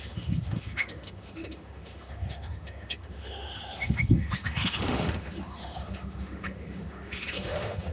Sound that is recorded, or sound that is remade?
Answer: remade